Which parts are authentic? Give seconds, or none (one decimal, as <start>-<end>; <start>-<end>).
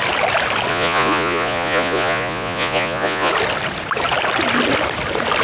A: 0.0-0.7; 3.3-5.4